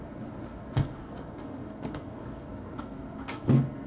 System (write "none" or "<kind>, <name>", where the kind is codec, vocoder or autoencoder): codec, SNAC